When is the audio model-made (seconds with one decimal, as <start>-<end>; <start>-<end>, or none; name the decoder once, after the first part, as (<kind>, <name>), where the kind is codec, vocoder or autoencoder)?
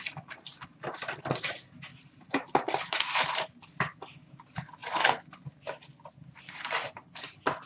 1.9-3.6 (vocoder, BigVGAN v2)